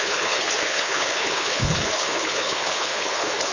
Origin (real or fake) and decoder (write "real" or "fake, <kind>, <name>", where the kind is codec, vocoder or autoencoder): fake, codec, HILCodec